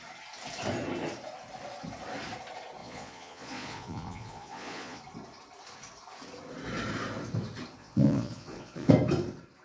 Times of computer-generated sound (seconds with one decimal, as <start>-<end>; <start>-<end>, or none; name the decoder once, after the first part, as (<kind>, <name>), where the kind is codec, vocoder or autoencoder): 2.8-5.0 (vocoder, Vocos); 7.8-8.9